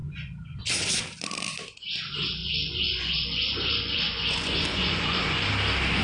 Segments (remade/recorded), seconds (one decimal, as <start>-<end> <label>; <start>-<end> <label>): 0.0-0.6 remade; 0.6-2.4 recorded; 2.4-5.5 remade; 5.5-6.0 recorded